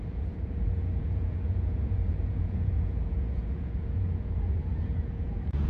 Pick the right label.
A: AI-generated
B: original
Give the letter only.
A